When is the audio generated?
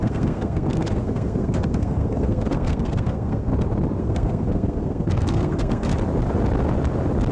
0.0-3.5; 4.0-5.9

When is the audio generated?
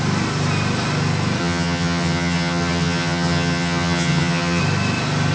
1.4-4.6